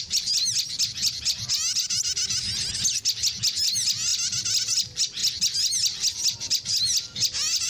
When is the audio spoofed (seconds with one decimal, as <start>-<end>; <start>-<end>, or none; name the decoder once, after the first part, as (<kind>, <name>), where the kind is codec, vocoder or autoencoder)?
none